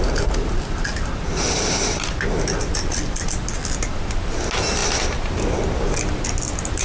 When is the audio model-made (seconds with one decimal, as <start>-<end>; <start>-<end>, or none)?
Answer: none